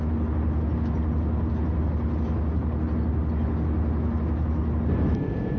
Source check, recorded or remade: recorded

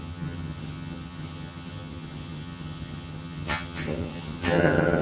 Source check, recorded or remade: remade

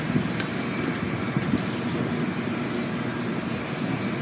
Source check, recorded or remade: recorded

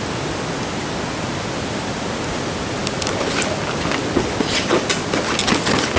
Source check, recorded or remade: recorded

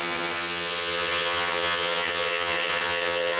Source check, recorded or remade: remade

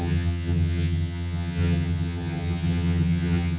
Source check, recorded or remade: remade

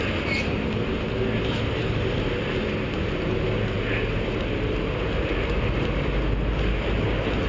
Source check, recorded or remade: recorded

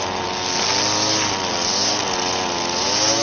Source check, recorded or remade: recorded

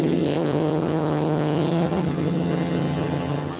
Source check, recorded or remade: remade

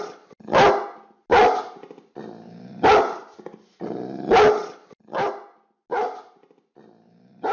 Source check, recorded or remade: recorded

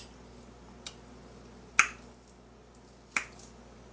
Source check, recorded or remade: recorded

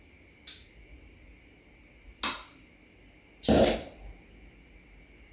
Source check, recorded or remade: recorded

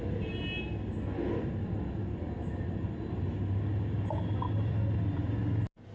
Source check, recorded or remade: recorded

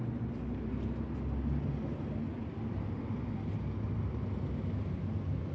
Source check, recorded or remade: recorded